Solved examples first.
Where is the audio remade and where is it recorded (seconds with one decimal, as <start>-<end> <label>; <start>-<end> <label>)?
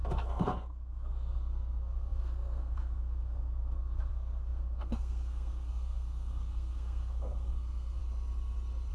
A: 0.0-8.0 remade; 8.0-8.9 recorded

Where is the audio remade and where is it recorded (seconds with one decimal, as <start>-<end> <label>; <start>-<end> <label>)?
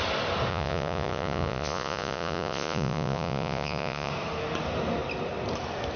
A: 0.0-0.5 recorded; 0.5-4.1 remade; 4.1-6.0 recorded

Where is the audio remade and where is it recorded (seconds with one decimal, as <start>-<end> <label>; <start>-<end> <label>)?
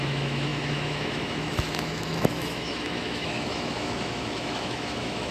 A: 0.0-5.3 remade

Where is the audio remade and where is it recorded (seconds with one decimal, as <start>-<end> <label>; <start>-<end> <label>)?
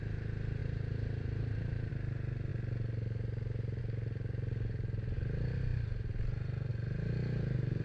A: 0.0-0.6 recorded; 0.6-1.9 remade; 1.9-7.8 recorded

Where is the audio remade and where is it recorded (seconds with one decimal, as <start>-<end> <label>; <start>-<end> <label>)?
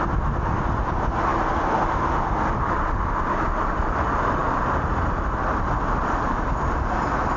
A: 0.0-7.4 recorded